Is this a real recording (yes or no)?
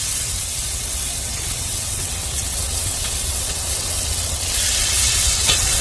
no